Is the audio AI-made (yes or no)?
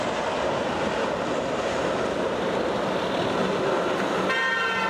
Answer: no